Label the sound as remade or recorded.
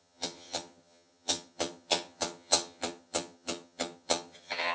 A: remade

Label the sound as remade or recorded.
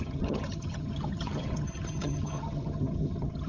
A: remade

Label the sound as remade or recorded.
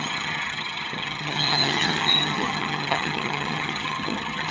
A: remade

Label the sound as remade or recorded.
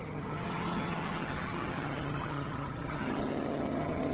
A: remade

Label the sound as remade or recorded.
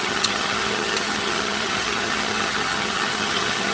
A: remade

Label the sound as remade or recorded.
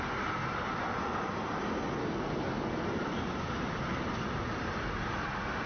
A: recorded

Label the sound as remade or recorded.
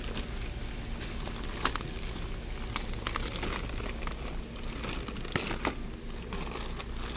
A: recorded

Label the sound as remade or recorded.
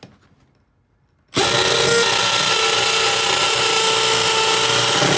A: recorded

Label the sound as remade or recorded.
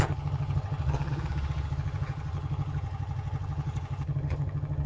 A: remade